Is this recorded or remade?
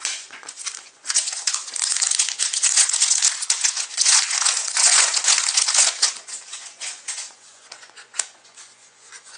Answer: remade